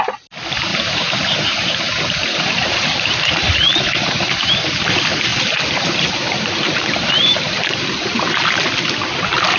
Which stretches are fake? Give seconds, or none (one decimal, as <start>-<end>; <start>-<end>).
0.7-4.5; 5.3-8.5

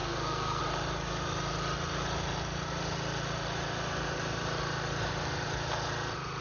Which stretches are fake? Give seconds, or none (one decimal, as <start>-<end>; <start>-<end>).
0.0-0.6

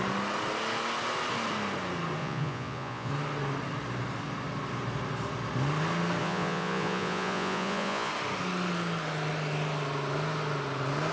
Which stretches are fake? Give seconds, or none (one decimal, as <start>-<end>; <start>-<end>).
2.2-3.1; 6.2-8.1